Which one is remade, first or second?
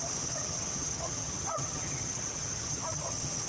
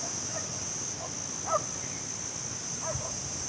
first